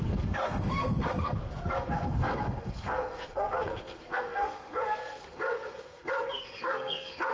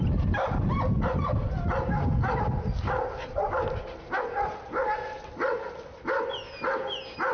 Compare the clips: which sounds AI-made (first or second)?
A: first